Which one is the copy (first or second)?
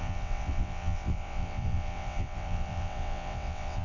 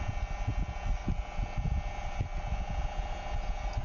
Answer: first